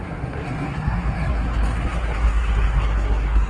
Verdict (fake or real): fake